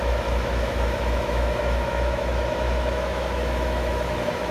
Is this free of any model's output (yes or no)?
no